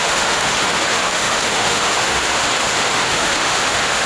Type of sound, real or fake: fake